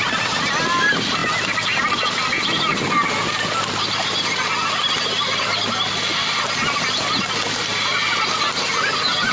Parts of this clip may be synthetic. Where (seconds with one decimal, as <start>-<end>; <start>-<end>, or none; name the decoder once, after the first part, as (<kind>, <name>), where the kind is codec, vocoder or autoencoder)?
none